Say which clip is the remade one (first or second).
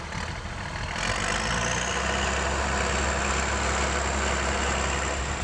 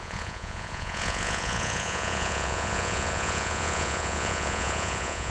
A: second